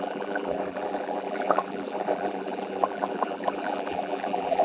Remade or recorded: remade